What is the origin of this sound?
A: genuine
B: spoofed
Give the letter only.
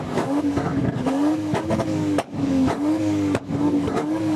B